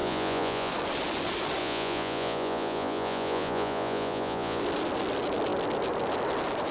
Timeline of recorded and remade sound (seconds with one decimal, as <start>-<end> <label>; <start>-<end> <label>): 0.0-0.7 remade; 0.7-1.6 recorded; 1.6-4.6 remade; 4.6-6.7 recorded